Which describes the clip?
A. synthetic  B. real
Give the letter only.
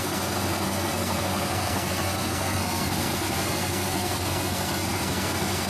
A